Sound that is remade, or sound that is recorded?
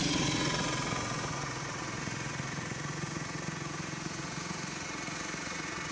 remade